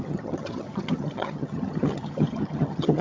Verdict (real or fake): fake